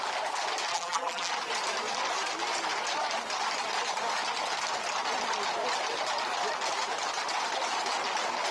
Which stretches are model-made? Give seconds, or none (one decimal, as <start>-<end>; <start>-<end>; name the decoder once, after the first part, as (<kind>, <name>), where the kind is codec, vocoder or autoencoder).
0.7-1.3 (vocoder, BigVGAN v2)